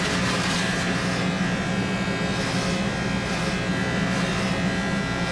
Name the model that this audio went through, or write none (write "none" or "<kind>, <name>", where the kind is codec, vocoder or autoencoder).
none